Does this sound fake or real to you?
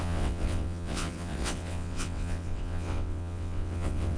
fake